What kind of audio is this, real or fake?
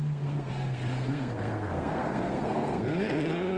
fake